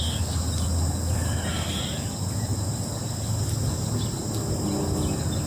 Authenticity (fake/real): real